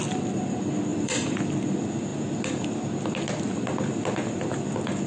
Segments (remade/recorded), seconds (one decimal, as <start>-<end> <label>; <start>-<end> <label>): 0.0-0.9 recorded; 0.9-1.4 remade; 1.4-5.1 recorded